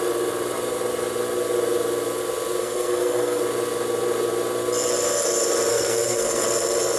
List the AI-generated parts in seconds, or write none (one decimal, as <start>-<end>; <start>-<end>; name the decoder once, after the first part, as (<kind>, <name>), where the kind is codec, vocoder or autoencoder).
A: 2.6-3.4 (codec, SNAC); 5.7-6.4